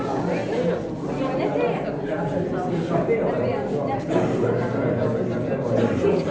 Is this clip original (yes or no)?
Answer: yes